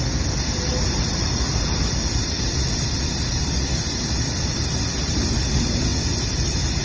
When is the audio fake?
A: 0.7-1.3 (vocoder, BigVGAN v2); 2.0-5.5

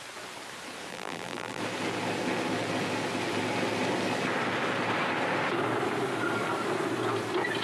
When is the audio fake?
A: 0.9-1.6 (vocoder, BigVGAN v2)